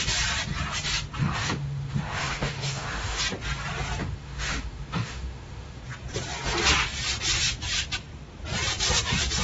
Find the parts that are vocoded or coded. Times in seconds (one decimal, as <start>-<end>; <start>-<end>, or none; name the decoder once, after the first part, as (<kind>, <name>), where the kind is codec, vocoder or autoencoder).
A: 1.2-3.2 (autoencoder, DAC-VAE); 4.0-5.8